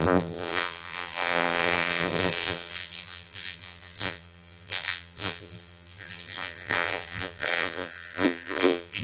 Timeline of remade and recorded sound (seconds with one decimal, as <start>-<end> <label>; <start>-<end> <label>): 0.0-9.0 remade